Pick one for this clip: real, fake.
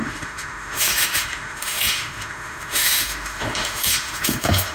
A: fake